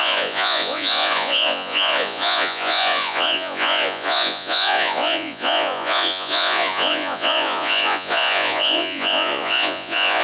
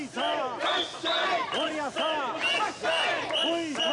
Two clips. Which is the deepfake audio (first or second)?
first